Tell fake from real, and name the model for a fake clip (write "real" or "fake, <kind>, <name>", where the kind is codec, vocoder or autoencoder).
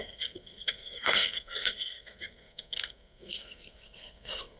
fake, codec, SNAC